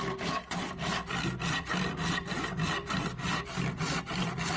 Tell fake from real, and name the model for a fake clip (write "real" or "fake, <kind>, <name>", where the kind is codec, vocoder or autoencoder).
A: real